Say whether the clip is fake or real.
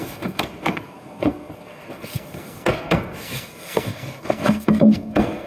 fake